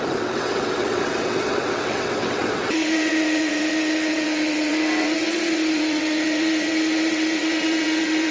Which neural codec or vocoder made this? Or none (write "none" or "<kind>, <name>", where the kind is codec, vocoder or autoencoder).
vocoder, WaveNeXt